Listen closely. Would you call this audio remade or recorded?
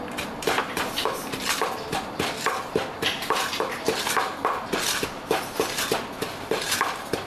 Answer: recorded